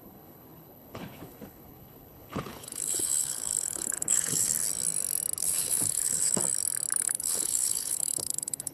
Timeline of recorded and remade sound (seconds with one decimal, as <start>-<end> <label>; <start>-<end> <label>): 0.0-4.5 remade; 4.5-5.4 recorded; 5.4-6.4 remade; 6.4-7.0 recorded; 7.0-8.7 remade